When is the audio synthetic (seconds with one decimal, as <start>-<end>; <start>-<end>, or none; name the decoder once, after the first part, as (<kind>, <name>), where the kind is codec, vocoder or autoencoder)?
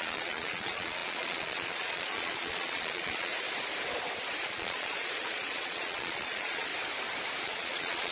0.0-3.3 (vocoder, Vocos); 4.4-6.7; 7.4-8.1